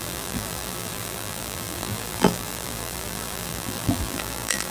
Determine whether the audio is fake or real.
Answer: fake